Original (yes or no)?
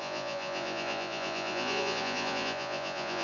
no